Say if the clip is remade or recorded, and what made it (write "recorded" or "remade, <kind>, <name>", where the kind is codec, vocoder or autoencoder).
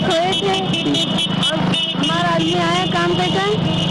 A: recorded